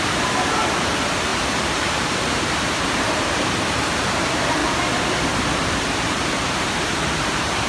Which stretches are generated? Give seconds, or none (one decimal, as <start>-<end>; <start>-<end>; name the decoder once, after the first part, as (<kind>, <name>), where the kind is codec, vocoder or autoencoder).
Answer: 0.0-4.6 (vocoder, BigVGAN v2); 5.7-7.7